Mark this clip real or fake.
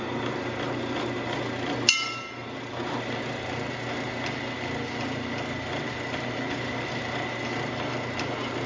real